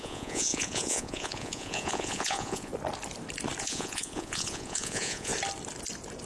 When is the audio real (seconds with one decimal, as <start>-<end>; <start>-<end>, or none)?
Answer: 2.7-3.6; 5.3-6.3